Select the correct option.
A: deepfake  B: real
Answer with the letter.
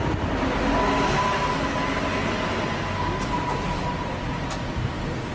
B